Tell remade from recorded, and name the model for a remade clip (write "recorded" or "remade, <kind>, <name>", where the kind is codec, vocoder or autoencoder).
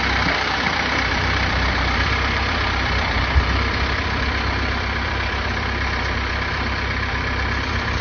remade, vocoder, BigVGAN v2